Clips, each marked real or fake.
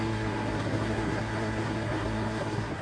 fake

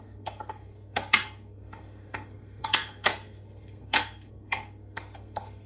fake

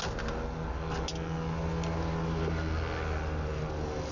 real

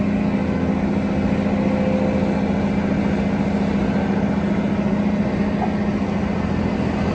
real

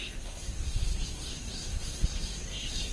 fake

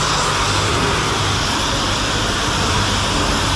real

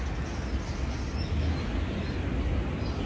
real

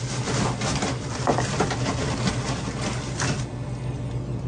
real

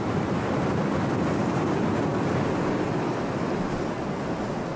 real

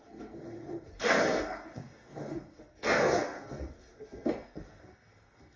fake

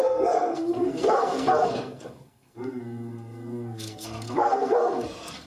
fake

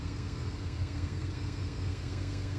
fake